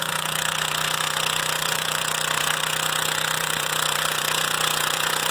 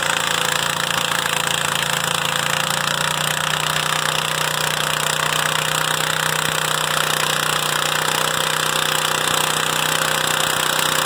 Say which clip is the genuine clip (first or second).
second